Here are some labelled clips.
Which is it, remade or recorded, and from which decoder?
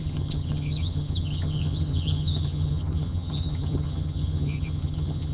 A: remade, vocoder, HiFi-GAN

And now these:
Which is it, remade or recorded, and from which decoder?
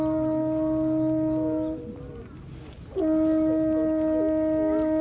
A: recorded